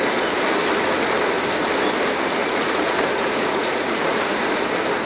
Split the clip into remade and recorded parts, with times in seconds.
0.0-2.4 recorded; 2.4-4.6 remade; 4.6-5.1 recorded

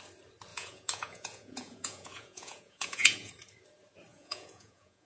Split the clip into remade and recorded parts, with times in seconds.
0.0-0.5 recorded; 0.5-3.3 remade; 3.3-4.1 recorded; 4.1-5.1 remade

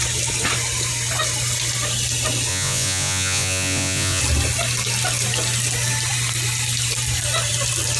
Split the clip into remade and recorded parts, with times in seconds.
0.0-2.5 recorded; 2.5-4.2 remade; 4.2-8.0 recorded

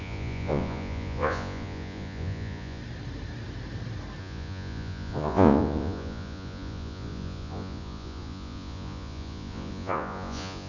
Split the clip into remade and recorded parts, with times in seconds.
0.0-2.8 remade; 2.8-4.2 recorded; 4.2-10.7 remade

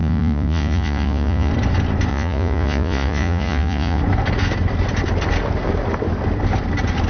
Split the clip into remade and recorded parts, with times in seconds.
0.0-1.5 remade; 1.5-2.1 recorded; 2.1-4.0 remade; 4.0-7.1 recorded